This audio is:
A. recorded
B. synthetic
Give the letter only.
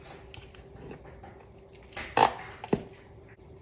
A